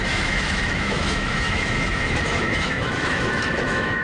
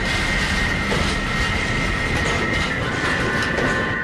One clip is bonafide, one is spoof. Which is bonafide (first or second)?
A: second